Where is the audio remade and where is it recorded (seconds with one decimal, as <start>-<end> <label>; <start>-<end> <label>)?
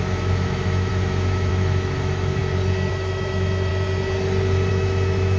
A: 0.0-2.4 remade; 2.4-2.9 recorded; 2.9-3.7 remade; 3.7-4.7 recorded; 4.7-5.4 remade